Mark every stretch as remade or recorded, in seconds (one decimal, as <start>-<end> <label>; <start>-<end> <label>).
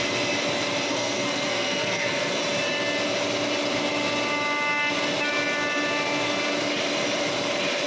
0.0-0.9 recorded; 0.9-2.4 remade; 2.4-7.9 recorded